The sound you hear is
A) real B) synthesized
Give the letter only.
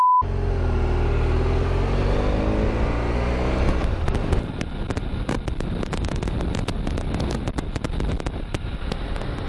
A